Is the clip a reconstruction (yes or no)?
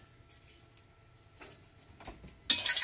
no